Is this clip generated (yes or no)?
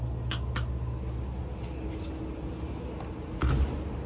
no